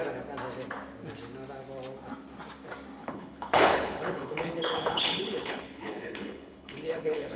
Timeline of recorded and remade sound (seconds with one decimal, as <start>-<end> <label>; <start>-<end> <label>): 0.0-3.0 recorded; 3.0-7.4 remade